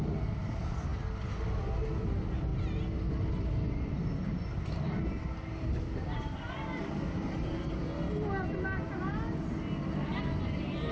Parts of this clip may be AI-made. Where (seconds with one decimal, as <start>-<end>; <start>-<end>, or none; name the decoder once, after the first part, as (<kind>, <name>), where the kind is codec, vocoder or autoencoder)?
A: none